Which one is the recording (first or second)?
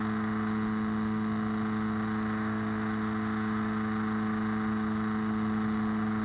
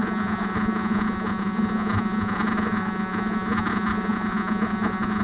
first